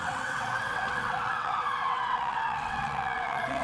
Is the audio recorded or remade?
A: remade